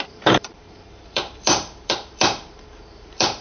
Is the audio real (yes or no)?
no